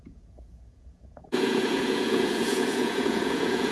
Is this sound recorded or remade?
remade